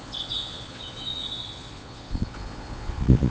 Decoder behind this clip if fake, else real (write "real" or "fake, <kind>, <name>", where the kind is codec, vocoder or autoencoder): fake, vocoder, Vocos